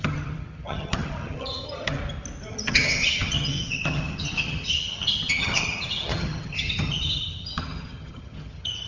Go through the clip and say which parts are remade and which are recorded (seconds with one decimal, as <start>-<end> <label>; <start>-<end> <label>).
0.0-2.0 remade; 2.0-2.5 recorded; 2.5-8.9 remade